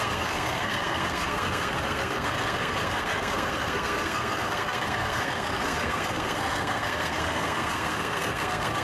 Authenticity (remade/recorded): remade